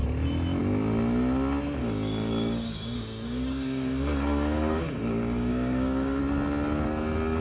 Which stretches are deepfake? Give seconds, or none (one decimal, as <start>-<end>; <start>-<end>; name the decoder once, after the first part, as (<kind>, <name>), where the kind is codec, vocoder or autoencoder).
1.8-6.2 (codec, DAC)